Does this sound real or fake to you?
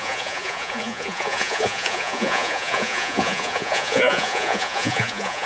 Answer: fake